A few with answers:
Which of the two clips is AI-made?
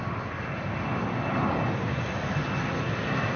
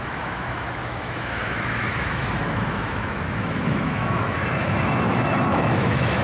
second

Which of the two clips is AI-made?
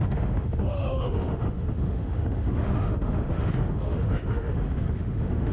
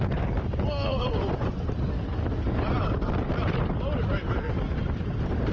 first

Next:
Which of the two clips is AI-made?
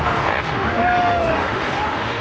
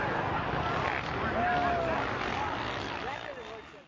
first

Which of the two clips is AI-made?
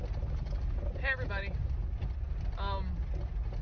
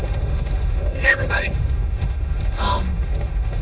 second